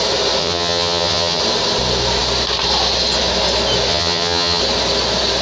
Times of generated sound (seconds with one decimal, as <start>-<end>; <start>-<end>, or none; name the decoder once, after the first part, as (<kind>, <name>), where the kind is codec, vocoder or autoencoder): 0.4-1.4 (vocoder, HiFi-GAN); 3.9-4.6